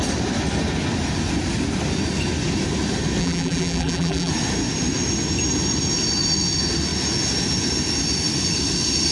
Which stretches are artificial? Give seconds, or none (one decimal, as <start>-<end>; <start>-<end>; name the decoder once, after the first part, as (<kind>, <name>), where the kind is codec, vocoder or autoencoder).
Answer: 3.2-4.3 (vocoder, BigVGAN v2)